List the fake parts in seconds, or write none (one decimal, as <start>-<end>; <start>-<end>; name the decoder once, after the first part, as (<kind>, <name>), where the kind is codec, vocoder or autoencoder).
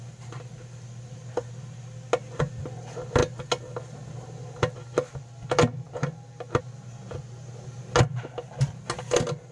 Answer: none